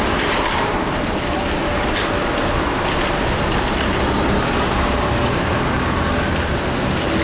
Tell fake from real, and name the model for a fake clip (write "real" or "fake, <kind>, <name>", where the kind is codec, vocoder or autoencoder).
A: real